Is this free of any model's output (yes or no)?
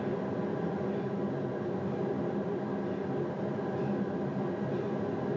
yes